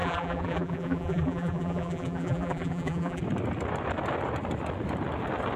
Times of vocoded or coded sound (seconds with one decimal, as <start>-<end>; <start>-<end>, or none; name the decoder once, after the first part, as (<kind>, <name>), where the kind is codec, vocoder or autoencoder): 0.0-3.2 (vocoder, BigVGAN v2)